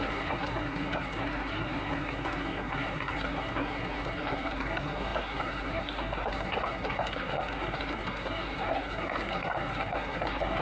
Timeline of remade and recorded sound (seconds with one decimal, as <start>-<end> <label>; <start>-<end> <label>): 0.0-10.6 remade

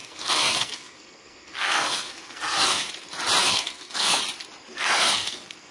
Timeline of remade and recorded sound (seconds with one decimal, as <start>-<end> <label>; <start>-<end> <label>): 0.0-2.9 remade; 2.9-3.4 recorded; 3.4-4.2 remade; 4.2-4.7 recorded; 4.7-5.7 remade

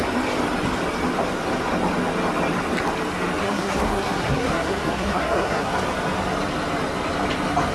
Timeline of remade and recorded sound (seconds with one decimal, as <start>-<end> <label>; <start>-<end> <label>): 0.0-3.4 recorded; 3.4-5.7 remade; 5.7-7.7 recorded

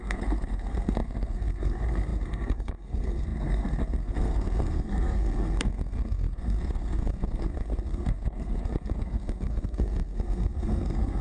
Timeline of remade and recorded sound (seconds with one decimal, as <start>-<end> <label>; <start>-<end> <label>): 0.0-11.2 remade

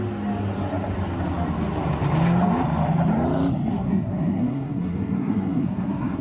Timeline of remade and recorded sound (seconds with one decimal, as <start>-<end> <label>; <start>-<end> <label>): 0.0-3.7 recorded; 3.7-6.2 remade

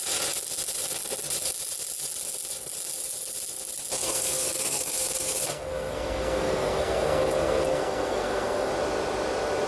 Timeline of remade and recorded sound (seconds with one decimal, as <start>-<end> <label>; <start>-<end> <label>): 0.0-4.0 recorded; 4.0-8.7 remade; 8.7-9.7 recorded

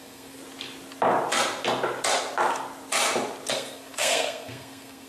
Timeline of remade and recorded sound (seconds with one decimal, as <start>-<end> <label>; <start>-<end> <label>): 0.0-0.4 remade; 0.4-3.5 recorded; 3.5-5.1 remade